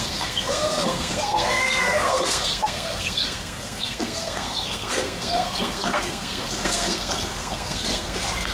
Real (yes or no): no